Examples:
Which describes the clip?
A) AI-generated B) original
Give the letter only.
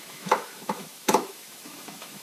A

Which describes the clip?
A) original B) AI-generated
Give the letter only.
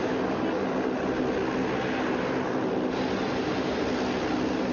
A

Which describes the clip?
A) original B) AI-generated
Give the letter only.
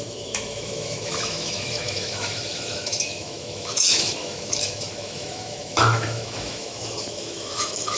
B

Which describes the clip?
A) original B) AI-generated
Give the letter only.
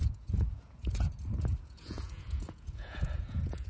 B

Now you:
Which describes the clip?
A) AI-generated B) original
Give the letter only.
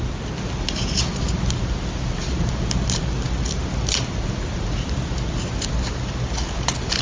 B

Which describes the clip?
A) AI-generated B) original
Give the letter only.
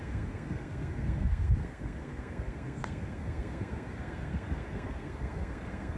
A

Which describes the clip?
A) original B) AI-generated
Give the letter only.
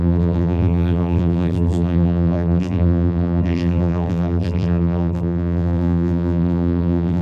B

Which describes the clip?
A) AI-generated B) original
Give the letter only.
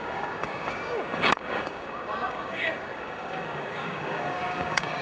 A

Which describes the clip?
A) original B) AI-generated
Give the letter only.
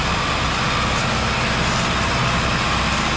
A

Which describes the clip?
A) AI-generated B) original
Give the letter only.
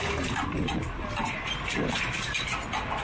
B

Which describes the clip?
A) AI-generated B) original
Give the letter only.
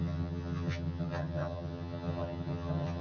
A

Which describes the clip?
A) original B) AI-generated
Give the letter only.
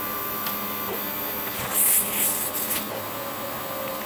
A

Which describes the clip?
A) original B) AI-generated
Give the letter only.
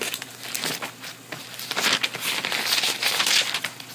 A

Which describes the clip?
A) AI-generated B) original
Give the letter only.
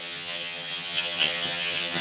A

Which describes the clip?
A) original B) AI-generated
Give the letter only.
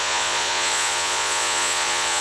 B